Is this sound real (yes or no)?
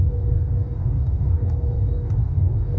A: no